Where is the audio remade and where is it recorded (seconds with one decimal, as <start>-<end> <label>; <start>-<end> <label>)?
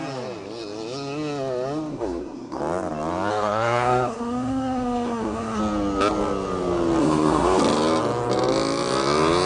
0.0-1.9 recorded; 1.9-2.6 remade; 2.6-3.3 recorded; 3.3-5.6 remade; 5.6-7.0 recorded; 7.0-7.6 remade; 7.6-9.5 recorded